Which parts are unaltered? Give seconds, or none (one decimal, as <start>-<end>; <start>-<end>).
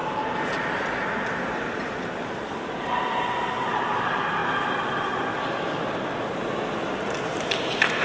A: 0.0-8.0